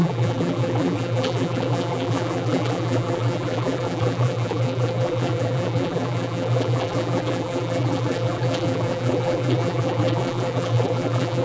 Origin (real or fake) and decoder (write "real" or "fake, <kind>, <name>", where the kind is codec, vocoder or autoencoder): fake, vocoder, BigVGAN v2